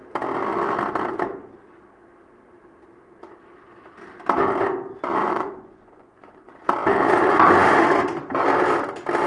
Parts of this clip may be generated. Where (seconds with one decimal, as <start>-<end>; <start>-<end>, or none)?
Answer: 5.2-6.5